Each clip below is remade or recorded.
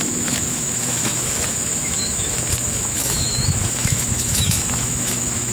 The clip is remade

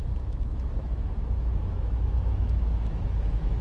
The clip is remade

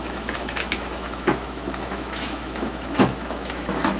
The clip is remade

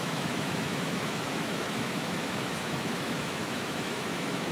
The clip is remade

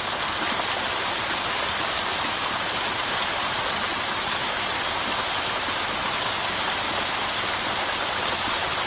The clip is recorded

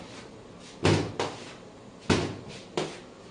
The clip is recorded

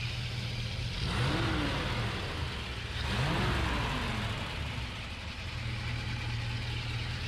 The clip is recorded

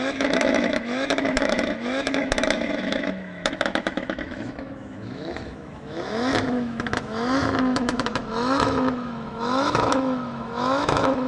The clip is remade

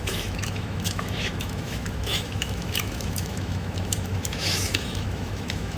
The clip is remade